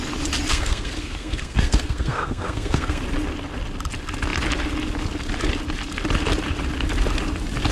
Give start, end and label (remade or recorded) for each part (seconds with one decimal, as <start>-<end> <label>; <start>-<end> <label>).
0.0-0.5 recorded; 0.5-3.0 remade; 3.0-7.7 recorded